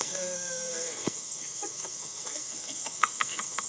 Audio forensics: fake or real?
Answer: fake